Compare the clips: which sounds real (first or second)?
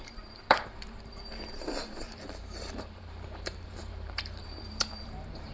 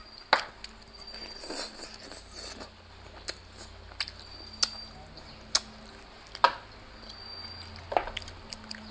second